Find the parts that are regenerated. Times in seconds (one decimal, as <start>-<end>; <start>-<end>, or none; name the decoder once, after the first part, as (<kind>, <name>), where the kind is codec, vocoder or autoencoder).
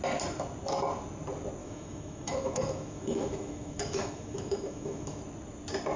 1.6-5.2 (autoencoder, DAC-VAE)